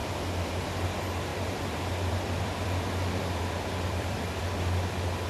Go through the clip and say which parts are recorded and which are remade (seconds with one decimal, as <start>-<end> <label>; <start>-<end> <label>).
0.0-0.5 remade; 0.5-1.3 recorded; 1.3-4.4 remade; 4.4-5.3 recorded